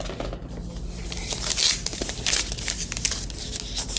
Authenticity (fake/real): real